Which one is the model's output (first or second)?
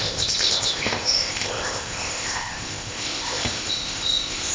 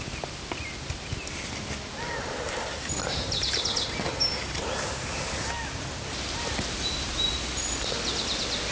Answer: first